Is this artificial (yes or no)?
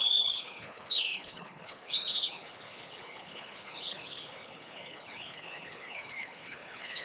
yes